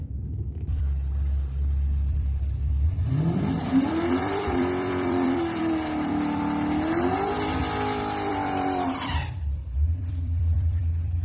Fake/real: fake